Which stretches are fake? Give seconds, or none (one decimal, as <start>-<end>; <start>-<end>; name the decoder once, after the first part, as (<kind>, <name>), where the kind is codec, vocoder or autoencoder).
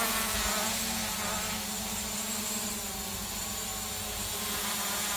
0.0-1.0 (vocoder, Vocos); 4.1-5.2